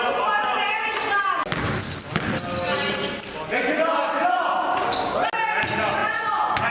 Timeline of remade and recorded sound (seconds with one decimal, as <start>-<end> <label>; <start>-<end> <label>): 0.0-6.0 recorded; 6.0-6.7 remade

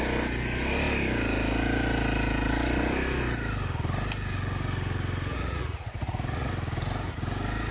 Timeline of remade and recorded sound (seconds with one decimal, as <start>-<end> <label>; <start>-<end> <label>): 0.0-5.3 recorded; 5.3-6.5 remade; 6.5-7.7 recorded